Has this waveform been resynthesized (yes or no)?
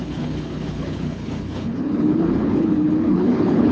yes